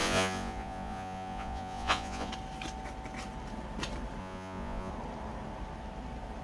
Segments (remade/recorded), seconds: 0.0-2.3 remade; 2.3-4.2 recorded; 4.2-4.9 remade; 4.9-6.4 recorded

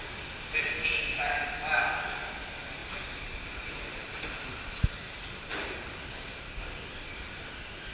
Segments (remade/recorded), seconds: 0.0-7.9 recorded

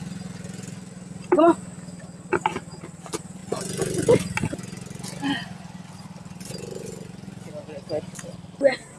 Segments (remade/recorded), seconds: 0.0-9.0 recorded

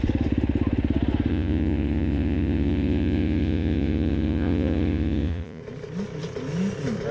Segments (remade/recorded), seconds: 0.0-1.3 recorded; 1.3-5.6 remade; 5.6-7.1 recorded

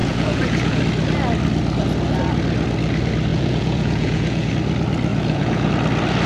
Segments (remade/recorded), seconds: 0.0-0.8 remade; 0.8-3.3 recorded; 3.3-4.5 remade; 4.5-5.1 recorded; 5.1-5.7 remade; 5.7-6.3 recorded

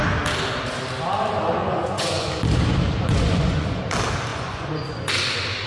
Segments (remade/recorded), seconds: 0.0-1.6 recorded; 1.6-2.3 remade; 2.3-3.1 recorded; 3.1-3.8 remade; 3.8-4.3 recorded; 4.3-5.1 remade; 5.1-5.7 recorded